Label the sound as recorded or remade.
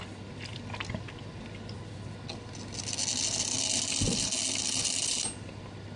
recorded